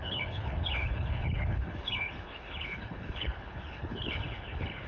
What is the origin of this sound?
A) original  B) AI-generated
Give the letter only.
B